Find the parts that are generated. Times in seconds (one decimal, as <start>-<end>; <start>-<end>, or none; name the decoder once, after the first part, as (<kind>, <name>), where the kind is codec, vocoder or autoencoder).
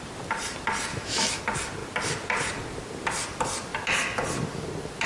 0.9-1.4 (autoencoder, DAC-VAE)